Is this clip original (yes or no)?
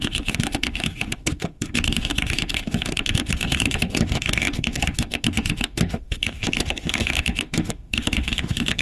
no